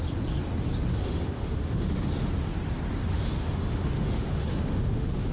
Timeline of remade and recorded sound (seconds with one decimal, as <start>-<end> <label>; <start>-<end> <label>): 0.0-0.9 recorded; 0.9-2.3 remade; 2.3-3.0 recorded; 3.0-5.3 remade